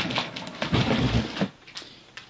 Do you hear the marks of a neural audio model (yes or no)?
no